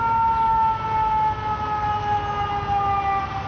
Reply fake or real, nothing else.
real